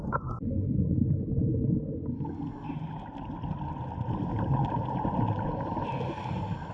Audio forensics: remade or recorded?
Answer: recorded